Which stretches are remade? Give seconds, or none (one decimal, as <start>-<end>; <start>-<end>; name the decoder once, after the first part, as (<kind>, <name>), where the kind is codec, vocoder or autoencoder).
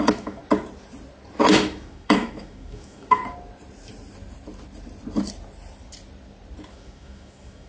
0.0-0.4 (autoencoder, DAC-VAE); 1.5-3.2; 6.7-7.7